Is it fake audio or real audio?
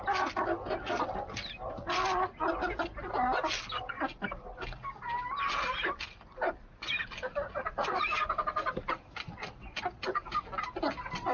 real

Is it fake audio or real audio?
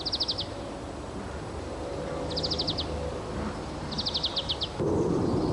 real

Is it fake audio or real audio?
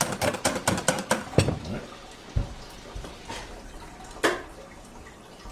real